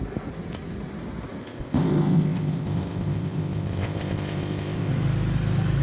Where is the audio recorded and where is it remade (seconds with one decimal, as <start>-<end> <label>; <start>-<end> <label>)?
0.0-1.4 recorded; 1.4-4.9 remade; 4.9-5.8 recorded